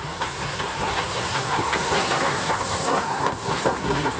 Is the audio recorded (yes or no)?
no